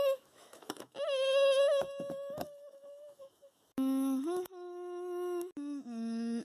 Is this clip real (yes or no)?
no